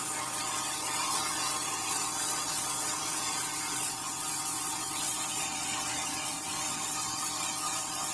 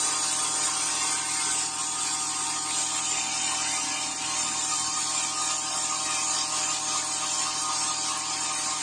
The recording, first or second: second